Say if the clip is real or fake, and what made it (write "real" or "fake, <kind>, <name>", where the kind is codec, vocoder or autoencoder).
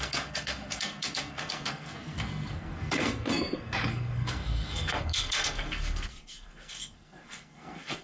fake, codec, SNAC